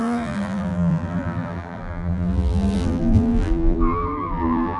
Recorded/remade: remade